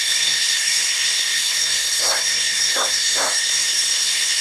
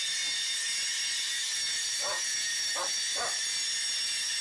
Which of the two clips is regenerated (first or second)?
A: first